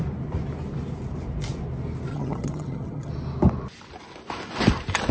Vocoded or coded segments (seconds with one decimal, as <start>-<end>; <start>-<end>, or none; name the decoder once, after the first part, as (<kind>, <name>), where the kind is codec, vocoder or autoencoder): 2.1-3.1 (vocoder, HiFi-GAN)